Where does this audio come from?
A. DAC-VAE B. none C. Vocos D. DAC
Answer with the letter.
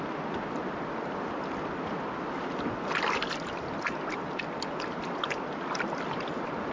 B